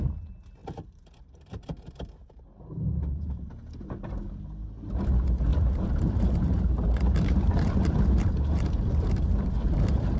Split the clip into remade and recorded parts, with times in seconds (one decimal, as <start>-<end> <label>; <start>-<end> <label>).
0.0-0.6 recorded; 0.6-3.4 remade; 3.4-5.5 recorded; 5.5-10.2 remade